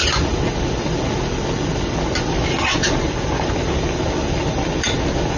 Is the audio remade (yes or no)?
no